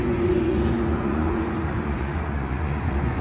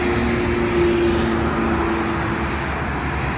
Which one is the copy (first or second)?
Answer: first